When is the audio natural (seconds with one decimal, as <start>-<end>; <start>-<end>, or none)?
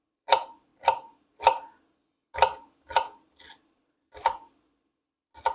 0.0-5.5